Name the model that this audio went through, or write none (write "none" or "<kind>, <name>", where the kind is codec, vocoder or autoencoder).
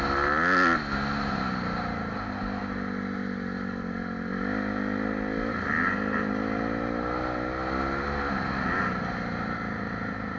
none